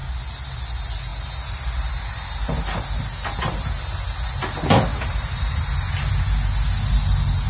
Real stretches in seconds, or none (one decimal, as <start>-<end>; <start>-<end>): 0.0-7.5